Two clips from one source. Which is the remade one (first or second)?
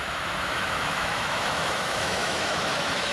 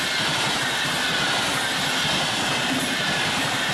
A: first